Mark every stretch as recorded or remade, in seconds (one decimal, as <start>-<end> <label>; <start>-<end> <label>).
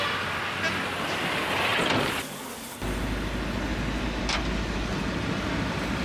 0.0-6.0 recorded